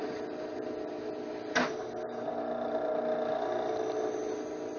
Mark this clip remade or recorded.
recorded